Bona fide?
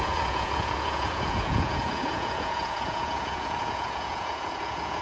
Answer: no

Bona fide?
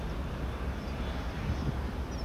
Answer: yes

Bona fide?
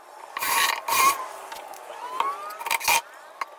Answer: yes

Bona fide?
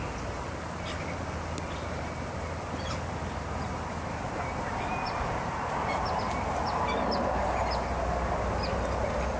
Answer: yes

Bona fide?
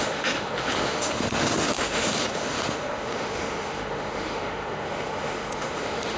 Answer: no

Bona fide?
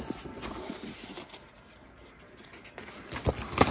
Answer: yes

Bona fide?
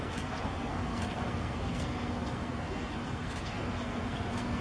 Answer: no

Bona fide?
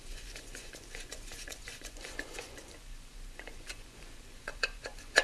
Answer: no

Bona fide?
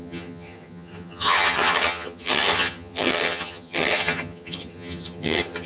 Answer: no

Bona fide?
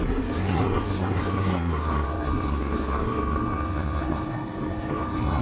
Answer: no